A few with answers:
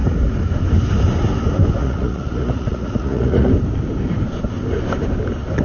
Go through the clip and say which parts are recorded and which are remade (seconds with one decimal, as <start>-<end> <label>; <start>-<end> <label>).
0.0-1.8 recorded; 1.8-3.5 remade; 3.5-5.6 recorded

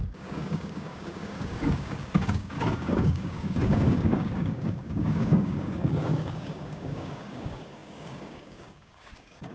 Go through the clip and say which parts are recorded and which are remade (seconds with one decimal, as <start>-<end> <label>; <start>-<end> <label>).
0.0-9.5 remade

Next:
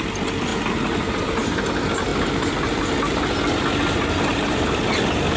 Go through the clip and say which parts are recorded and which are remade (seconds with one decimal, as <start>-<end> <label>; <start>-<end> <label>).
0.0-0.5 recorded; 0.5-1.6 remade; 1.6-2.1 recorded; 2.1-2.8 remade; 2.8-4.3 recorded; 4.3-5.0 remade; 5.0-5.4 recorded